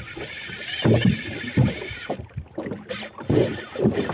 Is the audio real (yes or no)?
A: yes